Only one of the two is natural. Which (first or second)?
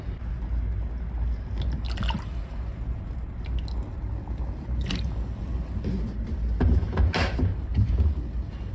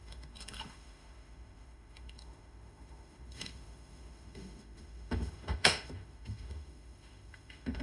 first